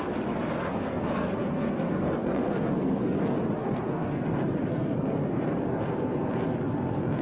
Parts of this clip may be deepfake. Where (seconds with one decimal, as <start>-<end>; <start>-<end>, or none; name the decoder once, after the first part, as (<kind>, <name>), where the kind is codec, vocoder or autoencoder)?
0.7-3.2 (codec, SNAC); 3.6-4.2; 4.7-5.5